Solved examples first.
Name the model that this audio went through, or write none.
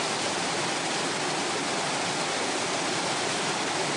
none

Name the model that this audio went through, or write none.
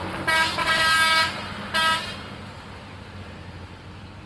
none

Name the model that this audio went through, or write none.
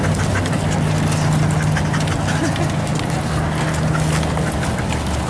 none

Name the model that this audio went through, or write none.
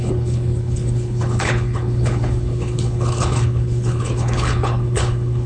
codec, HILCodec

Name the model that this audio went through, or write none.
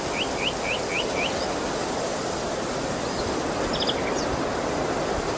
none